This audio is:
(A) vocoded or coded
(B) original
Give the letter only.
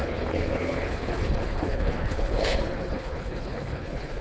A